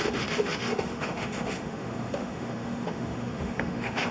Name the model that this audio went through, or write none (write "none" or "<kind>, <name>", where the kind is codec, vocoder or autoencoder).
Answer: autoencoder, DAC-VAE